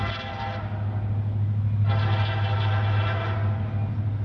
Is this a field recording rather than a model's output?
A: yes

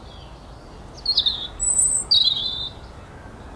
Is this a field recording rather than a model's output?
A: yes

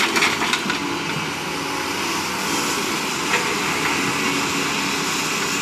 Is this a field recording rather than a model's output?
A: yes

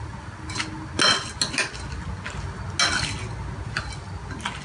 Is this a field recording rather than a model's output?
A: yes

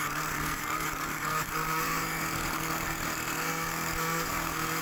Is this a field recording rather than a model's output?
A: no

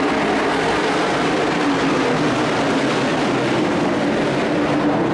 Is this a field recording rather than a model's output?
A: yes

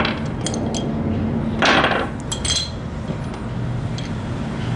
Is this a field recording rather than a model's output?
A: yes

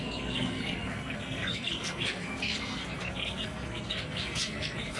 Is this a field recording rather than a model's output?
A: no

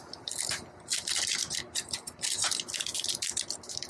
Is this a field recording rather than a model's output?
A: yes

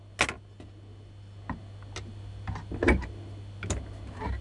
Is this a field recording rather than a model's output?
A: yes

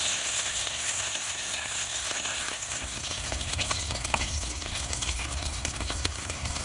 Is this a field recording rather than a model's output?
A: no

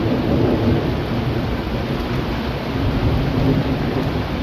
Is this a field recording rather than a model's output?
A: yes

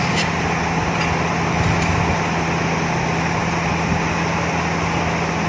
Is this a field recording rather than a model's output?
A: yes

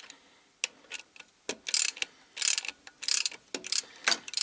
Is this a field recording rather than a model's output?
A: yes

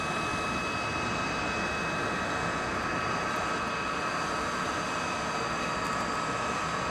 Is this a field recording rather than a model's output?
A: yes